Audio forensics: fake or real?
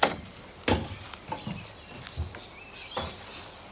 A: real